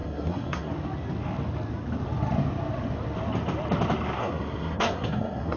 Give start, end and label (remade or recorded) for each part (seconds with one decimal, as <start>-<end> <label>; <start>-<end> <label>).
0.0-0.7 remade; 0.7-4.2 recorded; 4.2-5.6 remade